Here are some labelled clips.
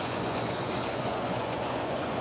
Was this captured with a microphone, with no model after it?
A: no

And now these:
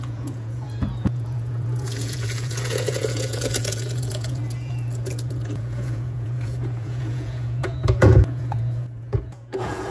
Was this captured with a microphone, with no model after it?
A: no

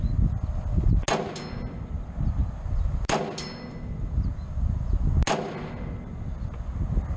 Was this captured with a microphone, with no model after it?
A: yes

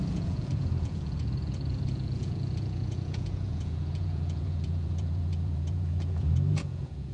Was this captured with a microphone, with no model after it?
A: no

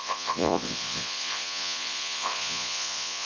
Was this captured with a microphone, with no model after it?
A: no